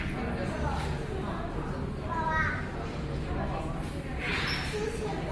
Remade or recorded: recorded